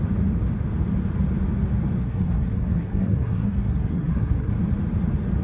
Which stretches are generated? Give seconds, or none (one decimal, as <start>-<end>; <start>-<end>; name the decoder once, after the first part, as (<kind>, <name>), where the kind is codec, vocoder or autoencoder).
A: 2.0-4.5 (codec, SNAC)